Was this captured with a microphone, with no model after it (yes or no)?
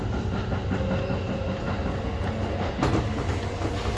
yes